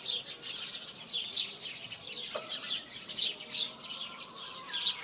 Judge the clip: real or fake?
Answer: real